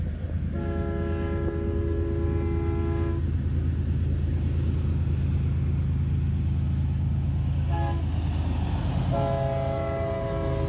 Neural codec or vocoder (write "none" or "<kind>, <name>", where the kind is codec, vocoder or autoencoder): none